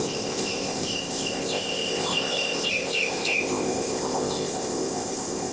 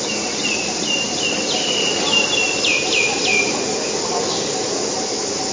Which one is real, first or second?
second